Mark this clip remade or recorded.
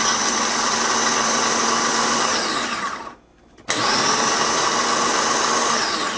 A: recorded